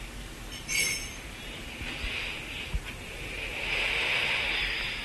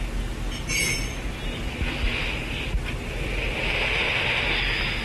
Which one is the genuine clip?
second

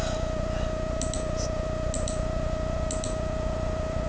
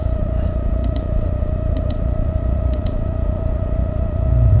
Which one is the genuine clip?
first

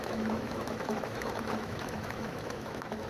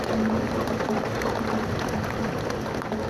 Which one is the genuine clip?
second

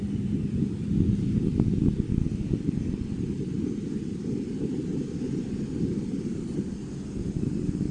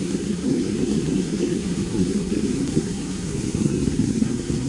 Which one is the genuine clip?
first